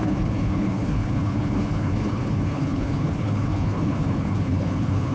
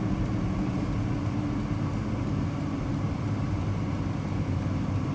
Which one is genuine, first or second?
second